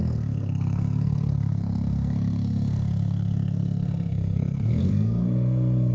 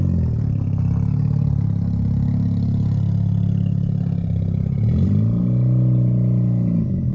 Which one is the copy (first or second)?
first